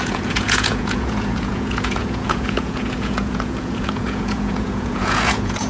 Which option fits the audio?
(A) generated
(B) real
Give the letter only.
A